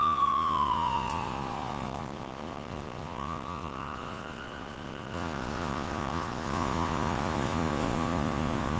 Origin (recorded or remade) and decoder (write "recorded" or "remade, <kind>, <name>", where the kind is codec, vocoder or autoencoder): remade, vocoder, Vocos